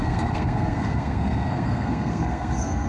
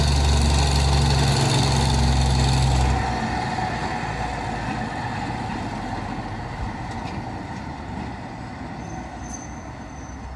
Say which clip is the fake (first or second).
first